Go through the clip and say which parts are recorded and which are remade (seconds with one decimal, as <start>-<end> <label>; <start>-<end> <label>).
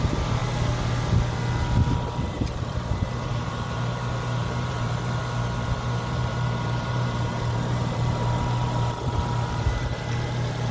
0.0-0.4 remade; 0.4-2.3 recorded; 2.3-5.2 remade; 5.2-5.8 recorded; 5.8-10.7 remade